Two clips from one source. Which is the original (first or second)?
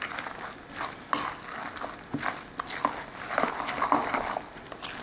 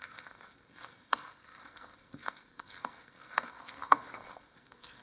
first